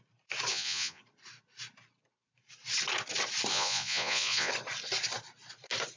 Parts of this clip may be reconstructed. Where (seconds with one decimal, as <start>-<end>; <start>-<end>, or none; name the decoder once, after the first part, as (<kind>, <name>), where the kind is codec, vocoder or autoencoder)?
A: 0.5-1.0 (vocoder, Vocos); 3.5-4.5